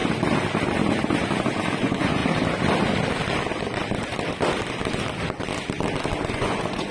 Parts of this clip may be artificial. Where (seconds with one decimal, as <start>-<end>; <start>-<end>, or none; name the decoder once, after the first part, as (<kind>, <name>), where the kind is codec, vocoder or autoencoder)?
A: 1.8-2.2 (vocoder, Vocos); 6.3-6.9